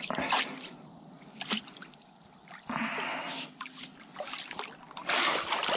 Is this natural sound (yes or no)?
yes